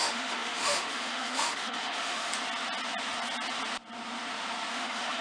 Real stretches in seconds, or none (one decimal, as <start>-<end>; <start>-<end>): 2.3-4.7